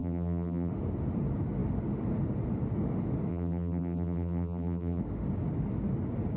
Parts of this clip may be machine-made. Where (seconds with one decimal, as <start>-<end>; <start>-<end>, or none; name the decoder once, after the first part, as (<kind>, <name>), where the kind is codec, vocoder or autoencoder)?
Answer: 0.0-0.7 (vocoder, BigVGAN v2); 3.3-5.0